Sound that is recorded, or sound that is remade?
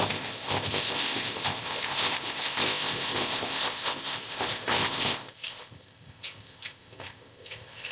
remade